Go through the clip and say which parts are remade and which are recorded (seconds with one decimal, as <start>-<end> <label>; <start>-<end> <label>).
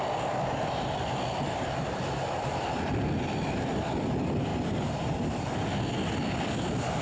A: 0.0-7.0 recorded